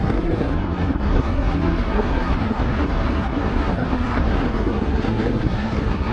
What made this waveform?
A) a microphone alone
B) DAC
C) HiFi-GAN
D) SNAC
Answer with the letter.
D